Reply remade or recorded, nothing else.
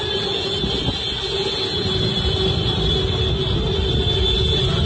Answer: recorded